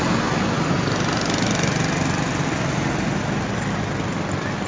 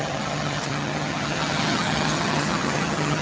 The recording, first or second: first